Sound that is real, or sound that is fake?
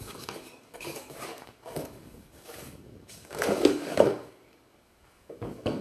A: fake